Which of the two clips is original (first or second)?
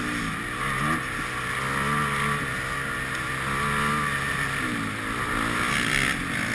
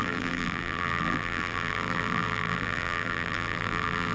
first